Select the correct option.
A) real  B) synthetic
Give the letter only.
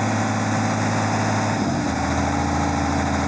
A